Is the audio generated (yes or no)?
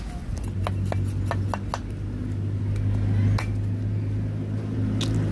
no